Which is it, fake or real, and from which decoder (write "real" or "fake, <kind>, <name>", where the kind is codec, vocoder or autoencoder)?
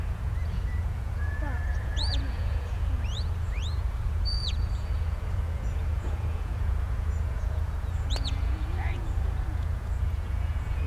fake, vocoder, Vocos